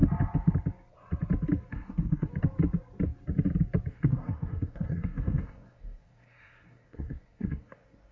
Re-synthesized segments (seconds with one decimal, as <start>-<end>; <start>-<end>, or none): 1.7-2.3; 3.9-8.1